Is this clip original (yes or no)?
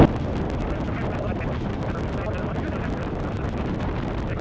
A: yes